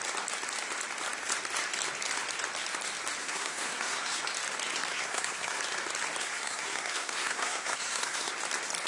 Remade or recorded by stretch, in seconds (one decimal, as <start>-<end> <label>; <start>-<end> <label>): 0.0-3.2 recorded; 3.2-4.2 remade; 4.2-4.9 recorded; 4.9-5.6 remade; 5.6-6.2 recorded; 6.2-8.3 remade; 8.3-8.9 recorded